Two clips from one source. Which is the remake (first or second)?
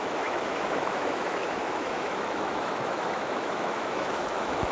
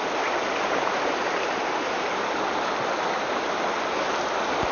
first